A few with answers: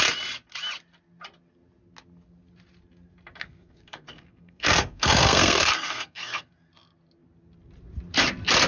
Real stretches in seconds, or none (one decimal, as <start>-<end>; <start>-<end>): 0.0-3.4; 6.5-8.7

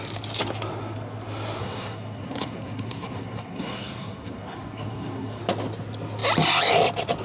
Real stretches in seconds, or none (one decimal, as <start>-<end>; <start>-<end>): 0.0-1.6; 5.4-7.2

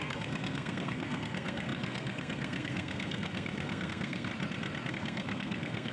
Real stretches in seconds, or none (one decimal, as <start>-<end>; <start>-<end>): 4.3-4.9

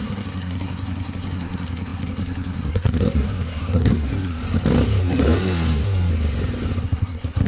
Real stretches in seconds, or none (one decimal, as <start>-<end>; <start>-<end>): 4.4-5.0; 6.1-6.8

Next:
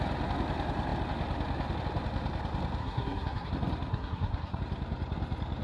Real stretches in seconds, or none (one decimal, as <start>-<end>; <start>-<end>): 0.0-2.8; 3.5-3.9; 4.6-5.6